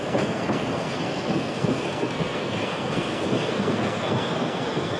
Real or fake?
fake